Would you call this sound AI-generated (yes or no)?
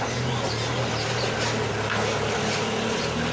no